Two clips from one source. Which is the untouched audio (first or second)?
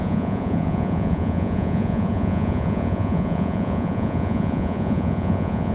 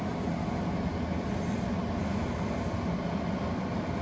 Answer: second